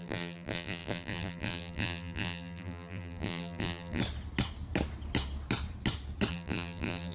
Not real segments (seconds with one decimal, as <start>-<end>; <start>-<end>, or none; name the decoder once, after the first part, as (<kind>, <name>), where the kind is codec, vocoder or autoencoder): 0.0-4.0 (vocoder, BigVGAN v2); 6.3-7.1